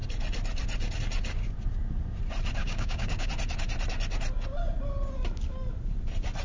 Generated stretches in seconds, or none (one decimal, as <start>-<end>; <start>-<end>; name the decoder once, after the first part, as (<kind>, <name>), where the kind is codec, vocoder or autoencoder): 2.6-3.3 (codec, DAC)